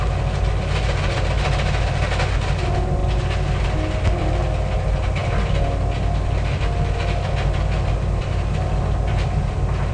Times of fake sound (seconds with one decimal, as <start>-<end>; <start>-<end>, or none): none